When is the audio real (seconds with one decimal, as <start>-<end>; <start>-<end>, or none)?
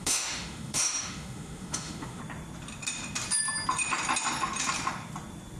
2.2-5.6